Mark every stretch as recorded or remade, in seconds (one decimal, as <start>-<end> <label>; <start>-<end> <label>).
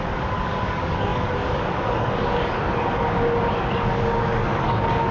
0.0-5.1 remade